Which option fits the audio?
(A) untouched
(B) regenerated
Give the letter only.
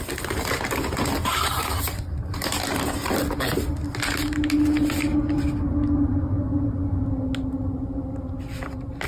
A